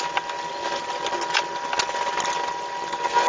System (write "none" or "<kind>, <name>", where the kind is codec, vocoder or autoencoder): none